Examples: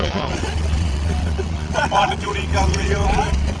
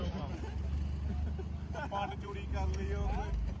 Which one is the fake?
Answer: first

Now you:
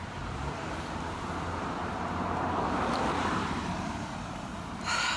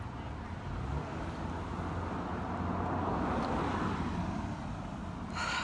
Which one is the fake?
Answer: first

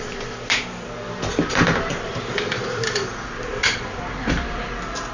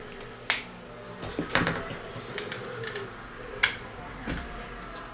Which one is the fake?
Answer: first